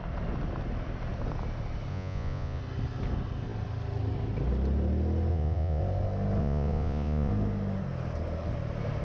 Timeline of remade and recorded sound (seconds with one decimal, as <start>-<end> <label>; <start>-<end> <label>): 0.0-1.9 recorded; 1.9-2.6 remade; 2.6-5.3 recorded; 5.3-5.8 remade; 5.8-6.4 recorded; 6.4-7.3 remade; 7.3-9.0 recorded